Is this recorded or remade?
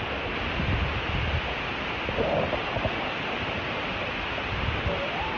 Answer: recorded